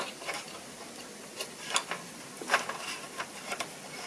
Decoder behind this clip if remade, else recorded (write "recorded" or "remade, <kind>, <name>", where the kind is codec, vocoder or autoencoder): recorded